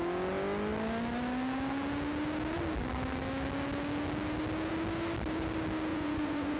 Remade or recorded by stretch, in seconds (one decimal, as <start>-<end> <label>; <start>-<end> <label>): 0.0-5.9 recorded; 5.9-6.6 remade